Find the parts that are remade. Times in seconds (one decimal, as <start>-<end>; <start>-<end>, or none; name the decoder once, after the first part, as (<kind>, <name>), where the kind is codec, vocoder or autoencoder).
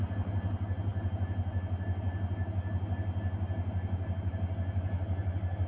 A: none